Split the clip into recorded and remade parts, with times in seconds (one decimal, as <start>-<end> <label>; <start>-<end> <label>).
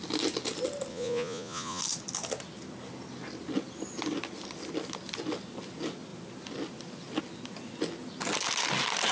0.0-0.9 recorded; 0.9-1.8 remade; 1.8-9.1 recorded